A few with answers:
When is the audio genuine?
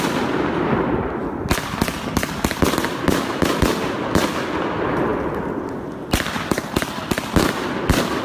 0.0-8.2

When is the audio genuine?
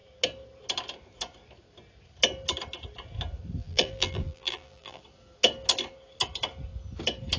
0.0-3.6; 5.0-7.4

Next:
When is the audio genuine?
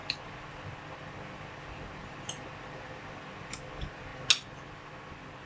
0.0-5.5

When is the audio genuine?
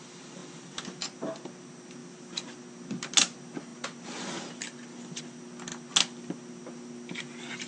0.0-2.0; 2.5-7.7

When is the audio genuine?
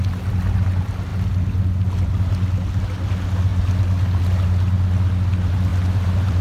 0.0-5.7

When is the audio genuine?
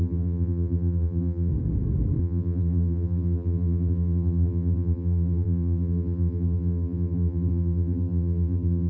1.5-2.2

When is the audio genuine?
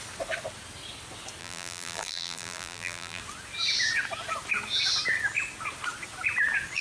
0.0-1.4; 3.2-6.8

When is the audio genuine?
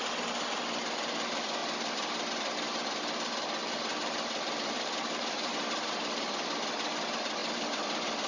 0.0-3.6; 5.5-8.3